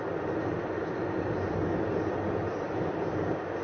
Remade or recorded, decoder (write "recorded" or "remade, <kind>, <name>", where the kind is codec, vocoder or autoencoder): recorded